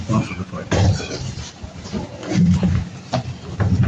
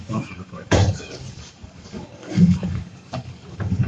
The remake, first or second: second